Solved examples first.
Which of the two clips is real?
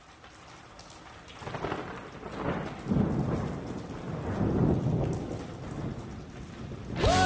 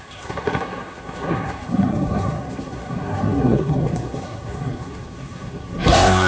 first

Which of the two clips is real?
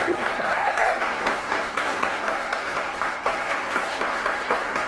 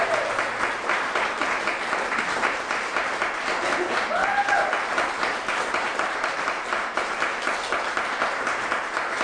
second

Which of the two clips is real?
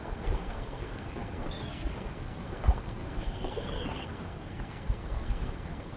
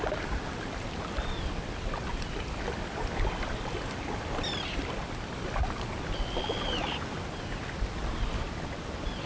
second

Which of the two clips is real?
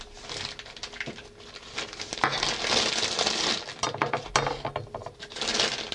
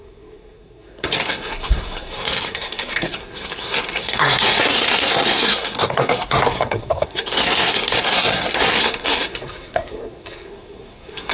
first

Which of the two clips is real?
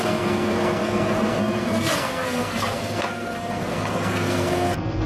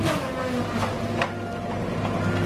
second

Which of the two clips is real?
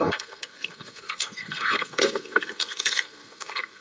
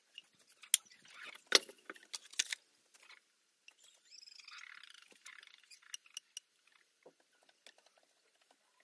second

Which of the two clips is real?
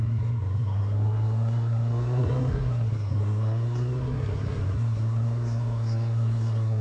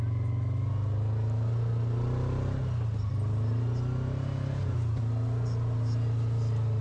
second